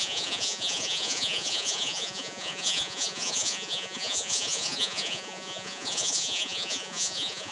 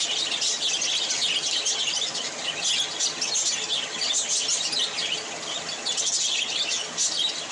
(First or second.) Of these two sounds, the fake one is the first